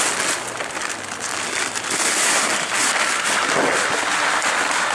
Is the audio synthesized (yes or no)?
no